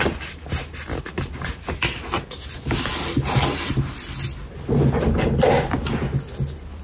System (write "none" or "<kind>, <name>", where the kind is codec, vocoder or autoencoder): none